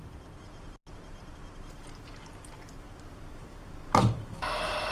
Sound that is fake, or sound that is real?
real